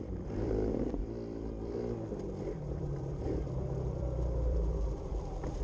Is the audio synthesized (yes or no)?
yes